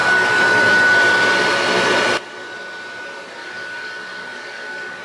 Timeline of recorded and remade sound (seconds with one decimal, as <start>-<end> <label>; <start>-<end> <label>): 0.0-3.4 recorded; 3.4-5.0 remade